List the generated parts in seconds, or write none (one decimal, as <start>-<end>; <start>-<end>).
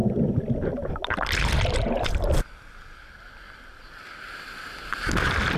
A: none